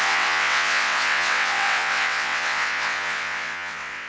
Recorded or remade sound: remade